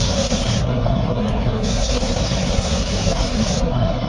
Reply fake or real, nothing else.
fake